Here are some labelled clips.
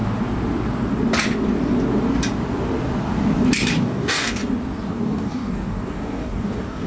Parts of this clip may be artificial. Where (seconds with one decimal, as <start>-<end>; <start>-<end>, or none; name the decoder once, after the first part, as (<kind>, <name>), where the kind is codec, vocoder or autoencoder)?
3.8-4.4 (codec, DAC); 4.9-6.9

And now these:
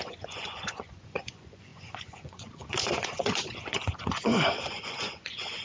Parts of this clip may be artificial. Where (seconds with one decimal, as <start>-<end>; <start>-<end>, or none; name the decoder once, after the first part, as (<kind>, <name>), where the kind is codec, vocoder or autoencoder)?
0.0-5.6 (vocoder, Vocos)

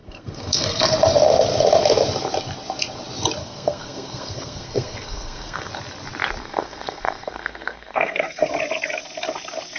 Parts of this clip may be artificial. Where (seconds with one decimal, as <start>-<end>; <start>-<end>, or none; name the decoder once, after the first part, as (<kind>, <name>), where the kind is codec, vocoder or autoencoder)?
0.0-0.8 (codec, SNAC); 3.4-5.7; 6.4-8.5

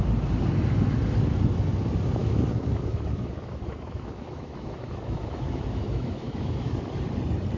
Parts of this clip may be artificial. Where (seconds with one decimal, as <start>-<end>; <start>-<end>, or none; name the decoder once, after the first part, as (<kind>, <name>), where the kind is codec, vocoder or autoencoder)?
2.2-6.8 (autoencoder, DAC-VAE)

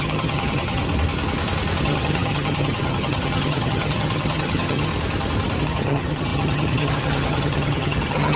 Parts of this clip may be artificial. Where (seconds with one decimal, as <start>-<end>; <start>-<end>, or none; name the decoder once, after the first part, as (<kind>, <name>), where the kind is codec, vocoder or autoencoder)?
0.0-0.8 (vocoder, HiFi-GAN); 1.8-4.9; 5.6-8.4